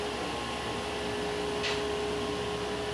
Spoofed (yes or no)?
no